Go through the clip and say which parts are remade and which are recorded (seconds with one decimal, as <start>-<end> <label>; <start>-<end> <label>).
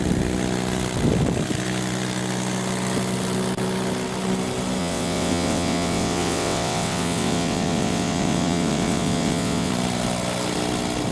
0.0-4.8 recorded; 4.8-9.7 remade; 9.7-11.1 recorded